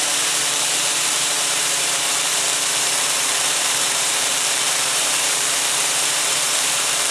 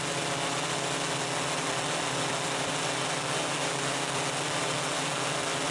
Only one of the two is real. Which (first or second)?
second